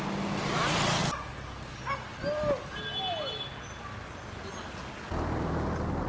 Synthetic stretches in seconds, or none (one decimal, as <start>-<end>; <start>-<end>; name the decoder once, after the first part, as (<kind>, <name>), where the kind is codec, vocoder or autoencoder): none

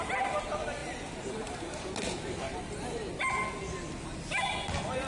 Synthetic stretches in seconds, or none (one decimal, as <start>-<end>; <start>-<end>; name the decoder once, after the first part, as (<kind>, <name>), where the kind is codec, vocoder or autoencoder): none

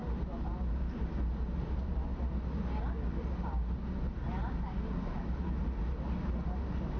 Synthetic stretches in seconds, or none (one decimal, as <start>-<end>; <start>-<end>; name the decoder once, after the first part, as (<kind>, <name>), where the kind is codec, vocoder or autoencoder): none

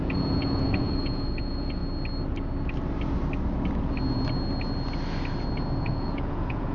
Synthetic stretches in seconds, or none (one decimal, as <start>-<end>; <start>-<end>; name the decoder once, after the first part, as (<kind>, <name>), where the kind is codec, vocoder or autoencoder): 0.0-1.8 (vocoder, Vocos); 5.8-6.7

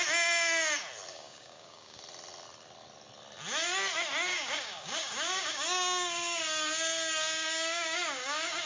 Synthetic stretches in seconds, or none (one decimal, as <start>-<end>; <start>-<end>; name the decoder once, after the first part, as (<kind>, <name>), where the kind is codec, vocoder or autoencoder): 1.1-2.0 (codec, DAC); 4.3-8.7

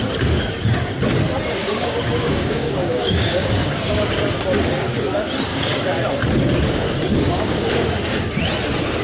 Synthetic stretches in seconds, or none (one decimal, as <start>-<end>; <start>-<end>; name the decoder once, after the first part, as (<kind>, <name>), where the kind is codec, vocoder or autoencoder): 1.6-3.9 (codec, DAC); 5.5-6.0; 7.1-7.7

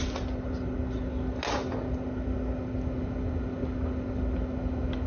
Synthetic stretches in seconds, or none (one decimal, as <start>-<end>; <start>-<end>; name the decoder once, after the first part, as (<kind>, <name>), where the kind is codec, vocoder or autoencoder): none